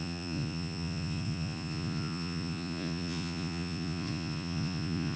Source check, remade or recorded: remade